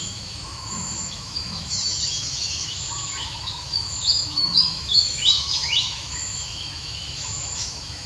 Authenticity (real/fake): fake